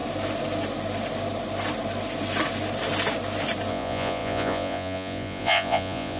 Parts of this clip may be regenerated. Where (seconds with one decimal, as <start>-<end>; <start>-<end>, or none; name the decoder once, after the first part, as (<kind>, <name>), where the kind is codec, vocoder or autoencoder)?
3.7-6.2 (vocoder, Vocos)